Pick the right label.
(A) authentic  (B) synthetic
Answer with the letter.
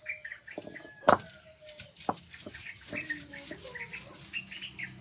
A